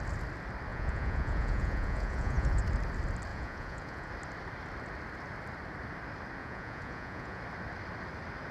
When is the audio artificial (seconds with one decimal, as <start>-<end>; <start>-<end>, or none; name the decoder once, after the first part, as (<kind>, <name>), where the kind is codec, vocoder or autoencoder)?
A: 0.7-2.6 (vocoder, Vocos); 3.3-4.1; 6.4-7.4